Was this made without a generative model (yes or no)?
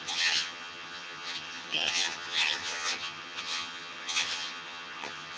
no